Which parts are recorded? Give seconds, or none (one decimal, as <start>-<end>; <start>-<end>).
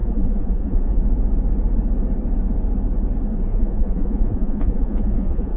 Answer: 1.0-3.5